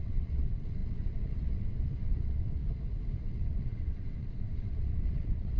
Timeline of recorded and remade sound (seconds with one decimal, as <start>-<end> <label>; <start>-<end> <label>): 0.0-2.6 remade; 2.6-3.2 recorded; 3.2-5.6 remade